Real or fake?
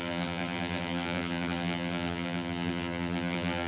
fake